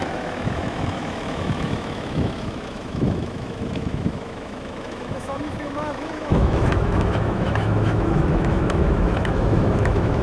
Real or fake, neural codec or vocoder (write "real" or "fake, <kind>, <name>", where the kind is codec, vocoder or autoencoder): fake, autoencoder, DAC-VAE